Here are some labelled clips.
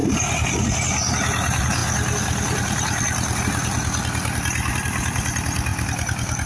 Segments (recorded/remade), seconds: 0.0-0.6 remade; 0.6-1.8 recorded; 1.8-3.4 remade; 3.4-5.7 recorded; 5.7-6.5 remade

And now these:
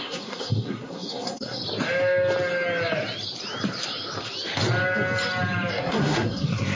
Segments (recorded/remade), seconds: 0.0-1.6 remade; 1.6-5.7 recorded; 5.7-6.8 remade

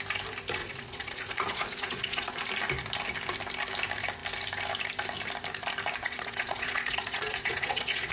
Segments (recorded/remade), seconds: 0.0-0.6 recorded; 0.6-2.4 remade; 2.4-6.0 recorded; 6.0-8.1 remade

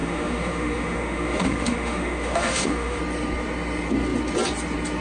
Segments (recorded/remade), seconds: 0.0-3.0 remade; 3.0-5.0 recorded

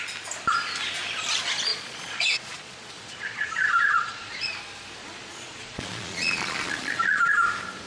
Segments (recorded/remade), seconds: 0.0-1.7 recorded; 1.7-4.5 remade; 4.5-5.0 recorded; 5.0-7.3 remade; 7.3-7.9 recorded

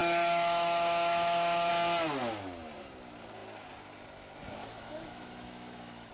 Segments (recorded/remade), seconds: 0.0-1.7 remade; 1.7-4.6 recorded; 4.6-6.1 remade

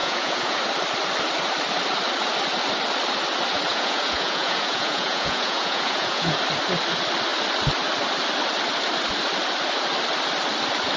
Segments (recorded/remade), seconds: 0.0-0.6 remade; 0.6-3.7 recorded; 3.7-6.4 remade; 6.4-11.0 recorded

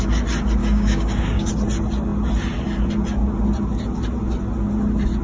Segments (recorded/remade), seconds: 0.0-0.6 recorded; 0.6-1.5 remade; 1.5-5.2 recorded